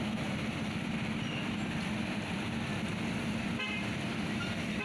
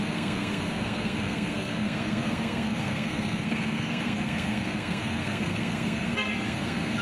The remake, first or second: second